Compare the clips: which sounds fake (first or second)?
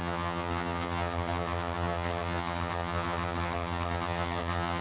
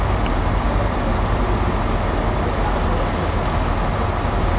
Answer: first